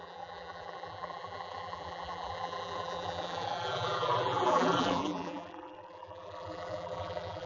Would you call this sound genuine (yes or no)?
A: no